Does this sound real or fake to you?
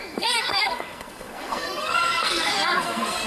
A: fake